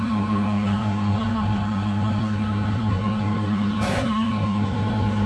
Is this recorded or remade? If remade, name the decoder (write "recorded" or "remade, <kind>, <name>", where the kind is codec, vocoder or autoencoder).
remade, codec, SNAC